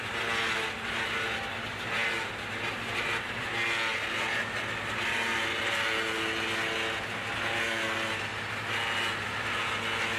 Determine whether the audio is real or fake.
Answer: real